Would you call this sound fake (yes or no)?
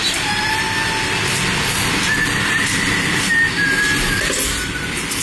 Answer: no